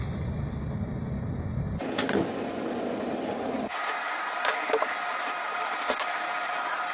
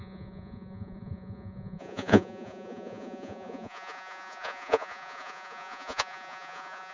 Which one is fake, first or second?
second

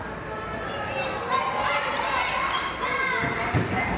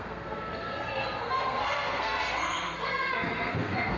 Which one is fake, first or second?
second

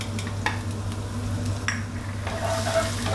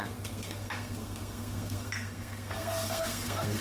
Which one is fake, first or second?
second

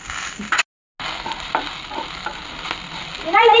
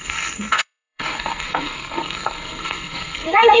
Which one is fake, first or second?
second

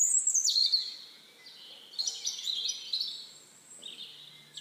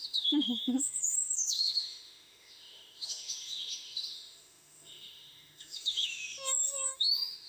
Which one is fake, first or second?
second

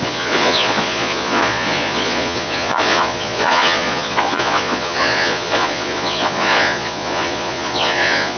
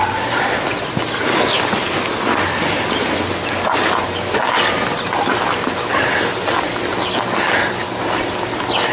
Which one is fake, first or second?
first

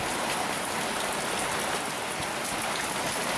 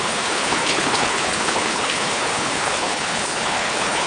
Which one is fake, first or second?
second